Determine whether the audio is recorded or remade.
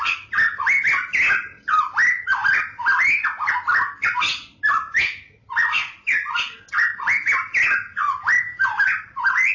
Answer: recorded